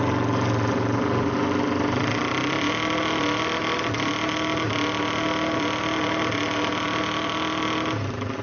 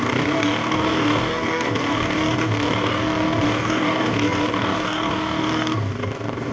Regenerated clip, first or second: second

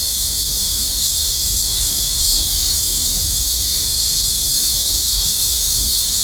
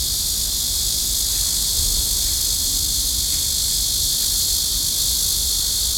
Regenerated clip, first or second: first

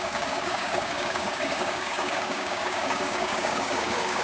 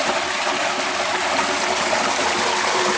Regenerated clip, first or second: first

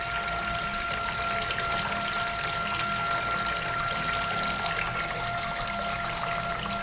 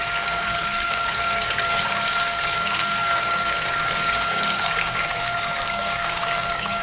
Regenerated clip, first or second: second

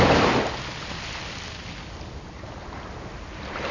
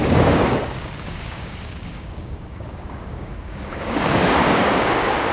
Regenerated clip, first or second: second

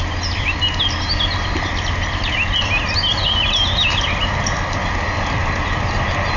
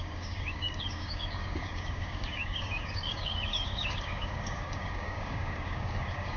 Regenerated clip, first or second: second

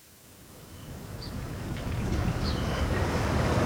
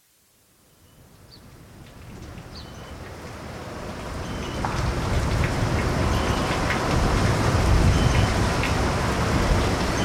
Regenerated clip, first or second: first